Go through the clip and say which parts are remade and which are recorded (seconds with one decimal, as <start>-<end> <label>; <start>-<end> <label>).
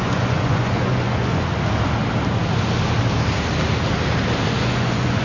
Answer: 0.0-1.5 remade; 1.5-4.6 recorded; 4.6-5.2 remade